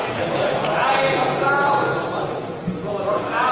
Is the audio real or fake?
fake